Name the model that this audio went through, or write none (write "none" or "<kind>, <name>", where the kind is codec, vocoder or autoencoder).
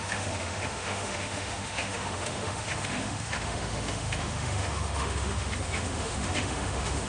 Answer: autoencoder, DAC-VAE